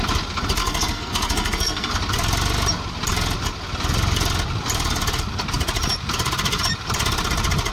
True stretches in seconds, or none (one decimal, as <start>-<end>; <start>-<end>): 0.0-0.6; 1.9-7.7